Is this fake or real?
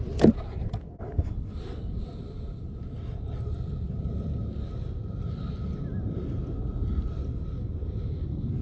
real